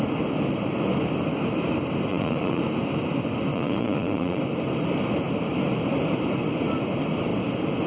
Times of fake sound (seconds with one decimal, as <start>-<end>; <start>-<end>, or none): 2.1-2.6; 3.5-4.4

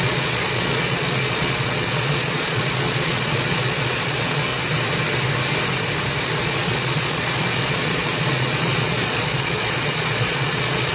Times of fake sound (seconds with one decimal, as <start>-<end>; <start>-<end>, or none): 0.0-4.5; 6.4-10.9

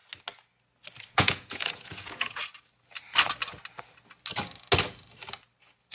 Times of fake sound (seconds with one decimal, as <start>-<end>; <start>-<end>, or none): 1.1-2.4

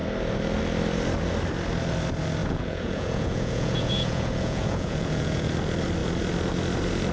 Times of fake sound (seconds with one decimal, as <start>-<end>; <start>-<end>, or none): 2.4-5.5

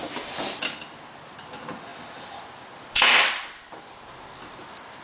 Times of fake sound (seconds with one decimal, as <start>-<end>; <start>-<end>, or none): none

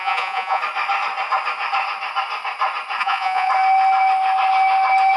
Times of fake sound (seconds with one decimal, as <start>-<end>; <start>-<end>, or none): 0.0-0.6; 3.0-3.5

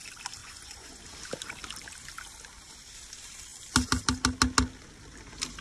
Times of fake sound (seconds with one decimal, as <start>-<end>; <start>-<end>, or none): 0.4-1.0

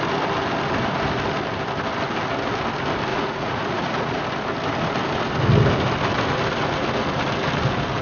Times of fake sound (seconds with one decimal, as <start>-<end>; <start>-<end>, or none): 3.1-4.2